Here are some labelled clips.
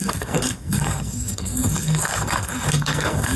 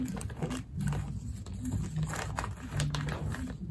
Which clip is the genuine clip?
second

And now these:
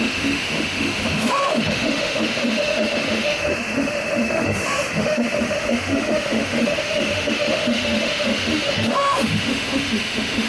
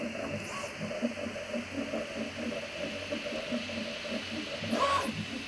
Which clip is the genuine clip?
second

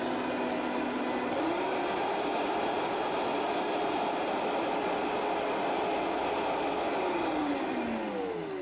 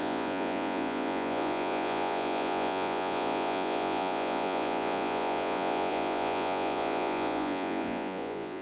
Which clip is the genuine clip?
first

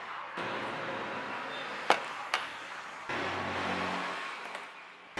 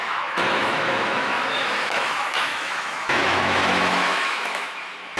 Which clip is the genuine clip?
first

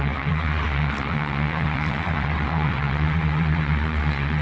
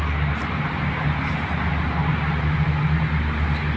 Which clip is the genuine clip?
second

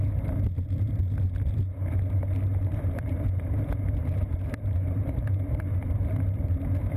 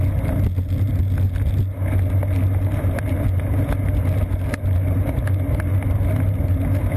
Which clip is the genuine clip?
second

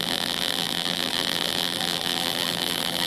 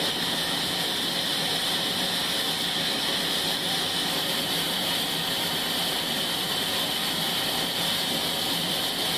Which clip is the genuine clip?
second